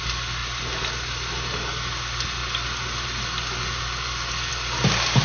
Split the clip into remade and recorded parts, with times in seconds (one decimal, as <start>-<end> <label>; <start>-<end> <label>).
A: 0.0-5.2 recorded